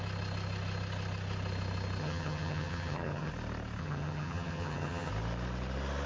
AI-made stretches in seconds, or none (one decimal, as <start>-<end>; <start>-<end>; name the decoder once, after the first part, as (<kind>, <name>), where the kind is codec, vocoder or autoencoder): 2.0-3.3 (vocoder, HiFi-GAN); 3.8-5.1